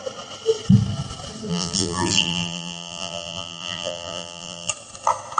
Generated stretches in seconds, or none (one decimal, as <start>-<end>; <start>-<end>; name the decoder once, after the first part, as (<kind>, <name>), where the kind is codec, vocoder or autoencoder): 1.5-4.7 (vocoder, BigVGAN v2)